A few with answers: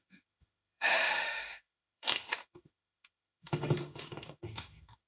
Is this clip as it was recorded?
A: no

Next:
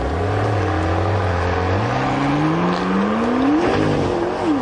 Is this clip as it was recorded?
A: yes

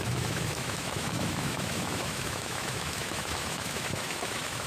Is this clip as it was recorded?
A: no